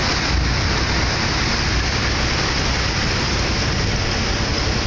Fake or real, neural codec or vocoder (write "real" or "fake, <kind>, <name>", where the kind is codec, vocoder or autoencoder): real